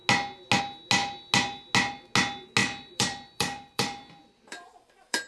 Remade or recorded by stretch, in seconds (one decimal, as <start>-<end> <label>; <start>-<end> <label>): 0.0-2.6 recorded; 2.6-5.3 remade